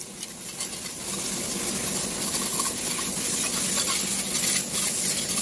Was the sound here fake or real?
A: real